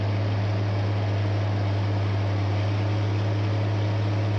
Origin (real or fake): real